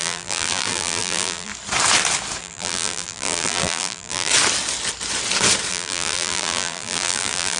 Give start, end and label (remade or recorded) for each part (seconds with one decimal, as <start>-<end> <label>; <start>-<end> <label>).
0.0-1.5 remade; 1.5-2.4 recorded; 2.4-4.3 remade; 4.3-5.7 recorded; 5.7-7.6 remade